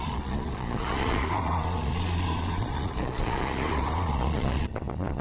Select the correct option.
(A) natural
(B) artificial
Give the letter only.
B